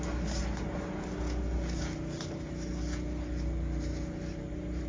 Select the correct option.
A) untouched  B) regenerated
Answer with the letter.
A